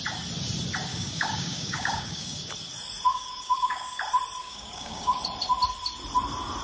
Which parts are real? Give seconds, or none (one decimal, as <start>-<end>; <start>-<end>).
0.0-0.9; 2.5-3.1; 4.0-4.4; 5.2-6.6